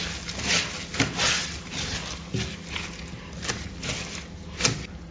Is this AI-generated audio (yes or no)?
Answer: no